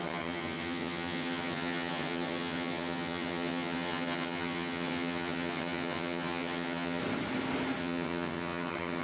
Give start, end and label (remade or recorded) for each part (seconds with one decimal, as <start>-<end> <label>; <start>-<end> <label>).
0.0-7.0 remade; 7.0-7.8 recorded; 7.8-9.0 remade